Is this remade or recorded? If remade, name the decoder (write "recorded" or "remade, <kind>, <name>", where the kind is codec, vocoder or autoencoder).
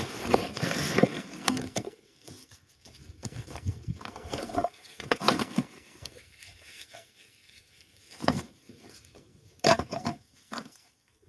remade, codec, SNAC